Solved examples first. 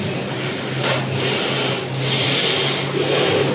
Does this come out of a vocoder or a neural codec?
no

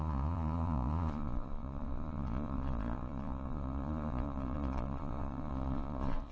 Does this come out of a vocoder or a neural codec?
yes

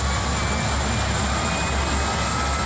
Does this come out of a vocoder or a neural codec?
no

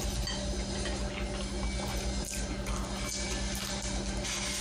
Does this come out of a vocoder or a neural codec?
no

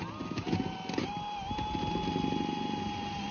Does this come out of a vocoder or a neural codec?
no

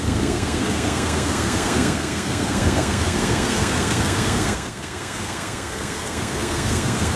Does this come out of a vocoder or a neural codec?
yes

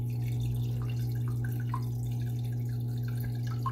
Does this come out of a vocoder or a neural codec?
no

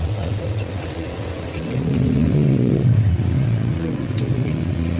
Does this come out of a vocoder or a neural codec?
yes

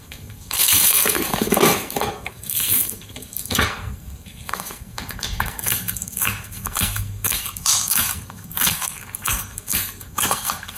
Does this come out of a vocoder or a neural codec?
yes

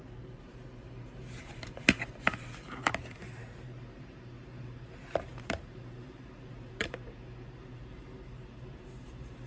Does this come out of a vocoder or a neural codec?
yes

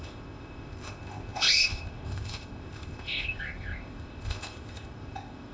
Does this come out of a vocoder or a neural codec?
yes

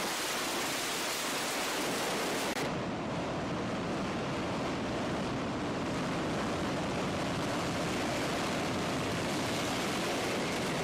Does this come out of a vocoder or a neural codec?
no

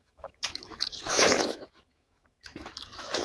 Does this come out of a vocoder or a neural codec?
yes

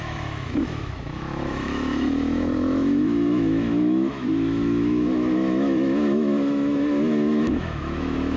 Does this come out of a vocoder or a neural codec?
yes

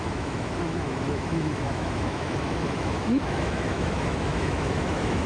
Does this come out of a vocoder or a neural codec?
yes